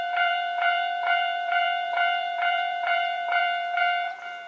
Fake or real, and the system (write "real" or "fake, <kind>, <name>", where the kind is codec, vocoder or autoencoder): fake, vocoder, BigVGAN v2